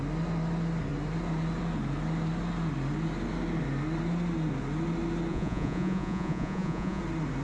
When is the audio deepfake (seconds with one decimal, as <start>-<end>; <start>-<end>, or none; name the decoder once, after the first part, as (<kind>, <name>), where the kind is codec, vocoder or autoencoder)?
5.3-7.0 (vocoder, Vocos)